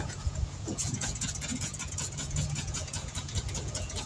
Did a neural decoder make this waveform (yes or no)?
yes